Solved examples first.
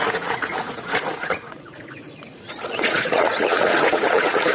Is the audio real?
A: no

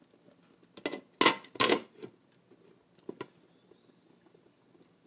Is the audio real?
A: yes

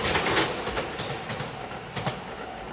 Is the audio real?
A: yes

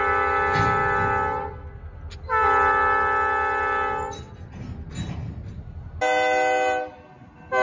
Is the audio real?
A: yes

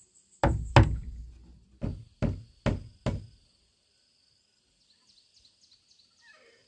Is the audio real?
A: yes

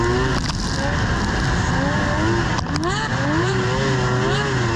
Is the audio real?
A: yes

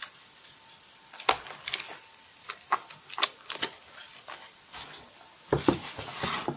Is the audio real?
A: yes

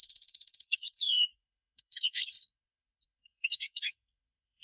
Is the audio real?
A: no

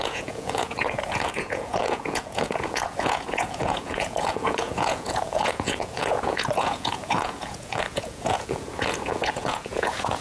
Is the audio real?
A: no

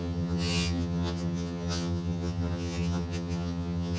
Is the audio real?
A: no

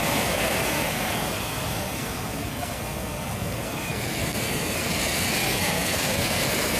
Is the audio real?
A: no